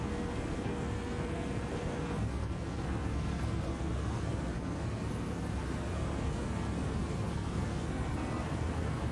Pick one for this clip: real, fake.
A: fake